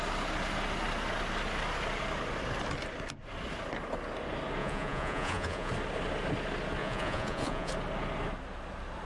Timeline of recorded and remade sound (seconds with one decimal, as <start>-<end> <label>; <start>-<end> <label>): 0.0-4.6 recorded; 4.6-5.7 remade; 5.7-6.8 recorded; 6.8-7.7 remade; 7.7-9.1 recorded